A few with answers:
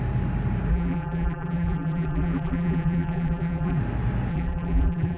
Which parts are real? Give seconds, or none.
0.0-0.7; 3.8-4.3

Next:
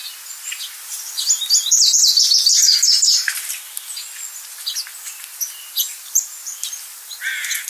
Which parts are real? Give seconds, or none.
0.0-2.5; 3.5-5.9; 6.5-7.7

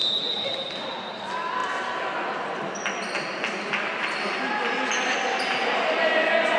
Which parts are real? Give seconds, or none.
0.6-1.6; 4.9-6.6

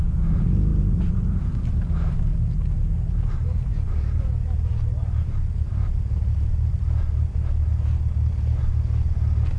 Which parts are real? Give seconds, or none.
0.0-0.7; 1.4-2.3; 6.8-9.6

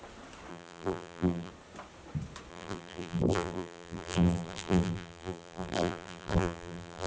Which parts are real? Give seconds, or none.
0.0-0.5; 1.5-2.5

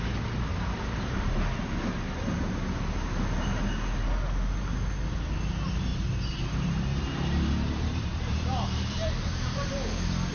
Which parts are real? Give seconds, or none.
0.0-0.5; 1.5-5.9; 9.7-10.3

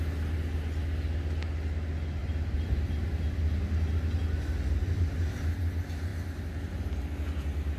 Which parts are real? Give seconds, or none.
0.0-2.2; 2.9-4.8; 5.6-7.8

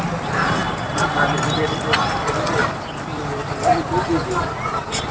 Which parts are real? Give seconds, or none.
0.6-1.7